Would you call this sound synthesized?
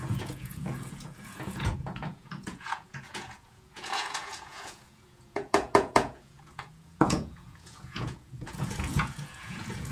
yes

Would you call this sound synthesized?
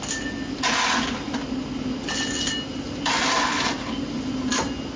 no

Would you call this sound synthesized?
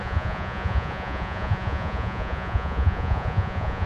yes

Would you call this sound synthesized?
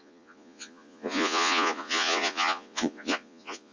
yes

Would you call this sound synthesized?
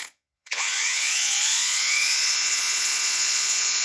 yes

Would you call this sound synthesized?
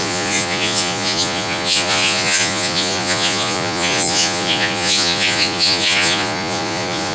yes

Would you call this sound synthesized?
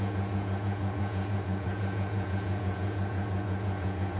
yes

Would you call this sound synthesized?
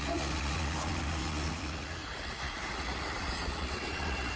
yes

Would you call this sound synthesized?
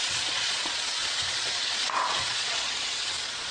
yes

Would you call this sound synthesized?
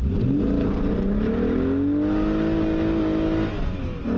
no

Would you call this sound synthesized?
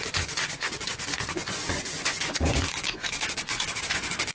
yes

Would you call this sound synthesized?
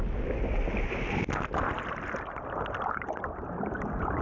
no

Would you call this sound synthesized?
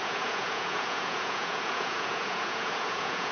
yes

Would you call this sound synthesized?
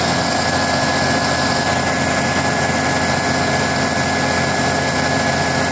no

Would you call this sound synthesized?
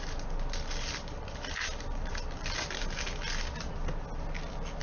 no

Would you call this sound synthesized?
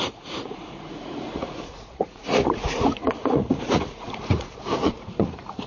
yes